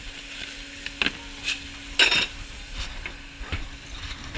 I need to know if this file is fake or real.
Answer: real